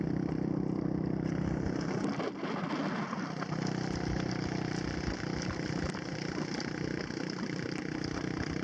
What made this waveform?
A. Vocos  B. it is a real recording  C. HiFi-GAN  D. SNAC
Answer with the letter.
B